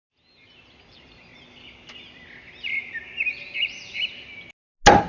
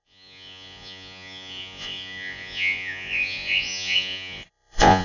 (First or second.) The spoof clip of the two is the second